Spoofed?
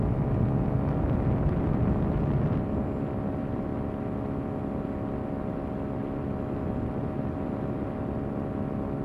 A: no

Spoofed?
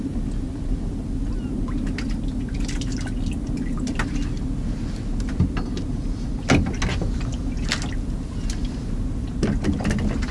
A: no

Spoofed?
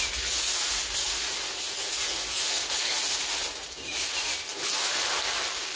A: no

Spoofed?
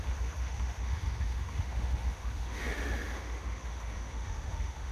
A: yes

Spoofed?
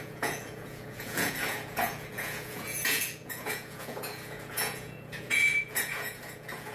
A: yes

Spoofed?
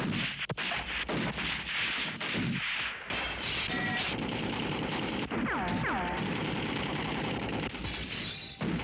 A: no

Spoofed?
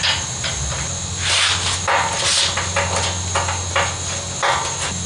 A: no